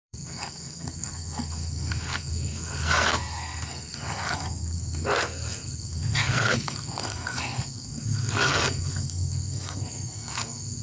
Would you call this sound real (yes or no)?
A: no